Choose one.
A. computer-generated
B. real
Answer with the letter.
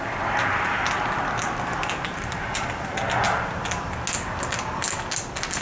B